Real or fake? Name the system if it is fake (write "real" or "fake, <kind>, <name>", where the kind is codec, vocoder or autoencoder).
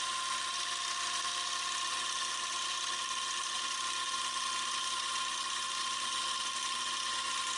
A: real